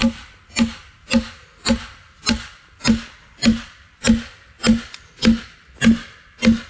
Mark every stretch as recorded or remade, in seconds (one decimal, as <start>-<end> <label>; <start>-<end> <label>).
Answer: 0.0-6.7 recorded